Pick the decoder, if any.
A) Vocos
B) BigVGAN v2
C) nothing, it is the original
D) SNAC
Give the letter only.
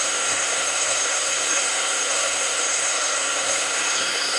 D